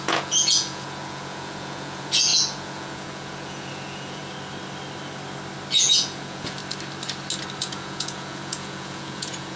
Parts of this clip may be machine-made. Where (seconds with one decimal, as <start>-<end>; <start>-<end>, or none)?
0.0-4.2; 5.7-6.6; 7.6-9.6